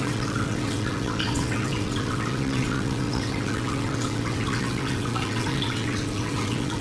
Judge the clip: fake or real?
fake